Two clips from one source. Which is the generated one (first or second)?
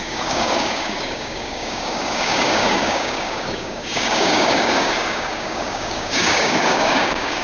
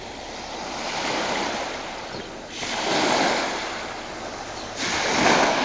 first